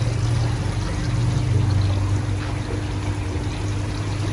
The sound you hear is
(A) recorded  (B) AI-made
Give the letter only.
A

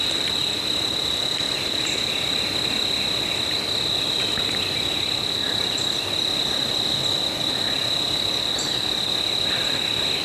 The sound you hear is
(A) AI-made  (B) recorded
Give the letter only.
B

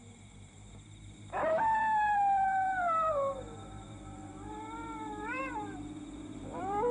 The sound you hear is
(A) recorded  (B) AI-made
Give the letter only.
B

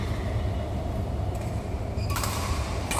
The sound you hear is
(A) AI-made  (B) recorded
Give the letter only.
B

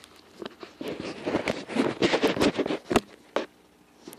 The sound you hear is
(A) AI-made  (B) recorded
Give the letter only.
B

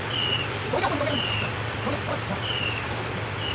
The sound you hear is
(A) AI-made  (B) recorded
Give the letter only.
A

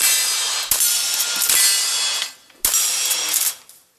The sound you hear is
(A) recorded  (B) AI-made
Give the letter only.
A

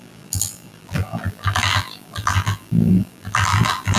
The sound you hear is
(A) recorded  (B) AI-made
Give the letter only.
B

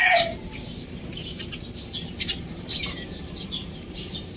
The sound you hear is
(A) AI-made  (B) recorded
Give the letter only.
A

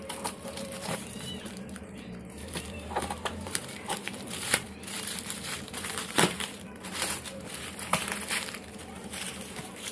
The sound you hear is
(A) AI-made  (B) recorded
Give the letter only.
A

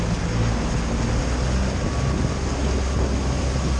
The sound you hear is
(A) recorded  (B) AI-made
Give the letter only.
A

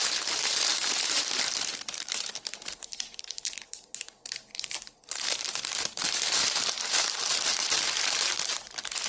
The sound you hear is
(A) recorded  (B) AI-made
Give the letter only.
B